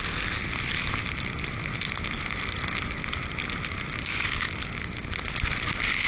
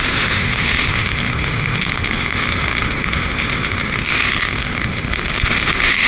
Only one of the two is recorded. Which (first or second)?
first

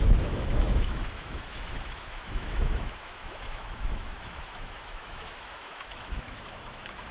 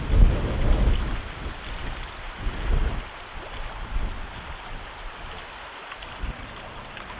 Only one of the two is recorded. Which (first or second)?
second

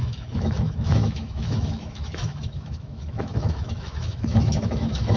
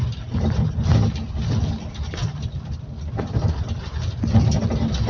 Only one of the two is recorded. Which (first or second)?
second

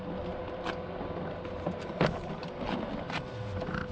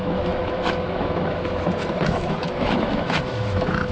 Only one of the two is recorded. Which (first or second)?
first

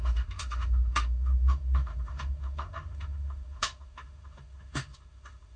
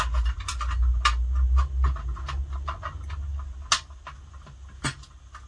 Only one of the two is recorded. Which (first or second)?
second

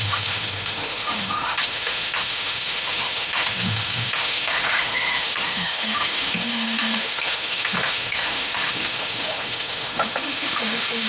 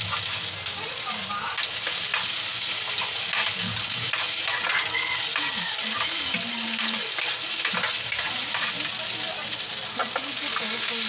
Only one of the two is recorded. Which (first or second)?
second